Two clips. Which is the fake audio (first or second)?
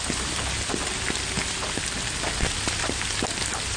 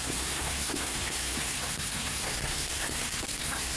second